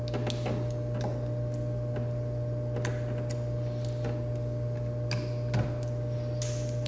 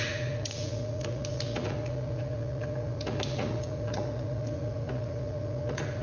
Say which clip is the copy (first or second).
second